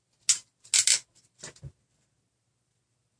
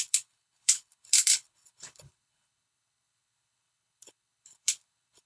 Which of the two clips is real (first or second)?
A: first